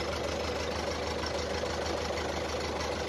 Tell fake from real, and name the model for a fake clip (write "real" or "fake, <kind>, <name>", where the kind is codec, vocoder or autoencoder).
real